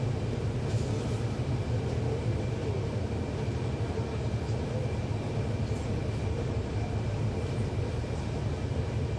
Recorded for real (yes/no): yes